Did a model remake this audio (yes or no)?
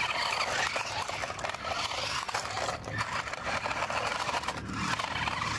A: no